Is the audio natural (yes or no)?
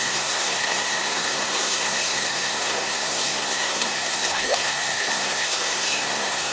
no